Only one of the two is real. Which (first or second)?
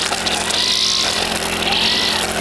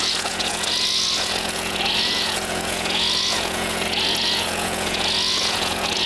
first